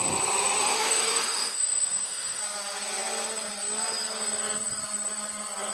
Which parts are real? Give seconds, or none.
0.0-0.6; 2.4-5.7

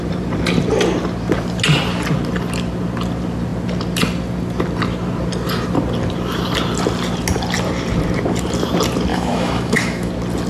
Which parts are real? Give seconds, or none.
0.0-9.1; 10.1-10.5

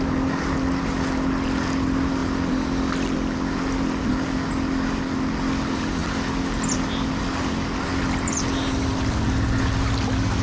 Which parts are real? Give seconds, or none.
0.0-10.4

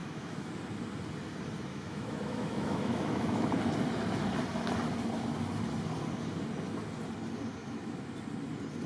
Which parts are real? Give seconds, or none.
0.5-1.7; 3.5-7.6; 8.1-8.9

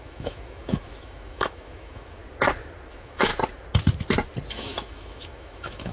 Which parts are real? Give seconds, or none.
2.2-2.9; 3.3-4.5